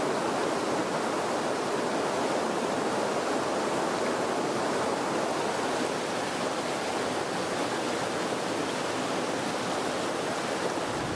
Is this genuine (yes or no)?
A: yes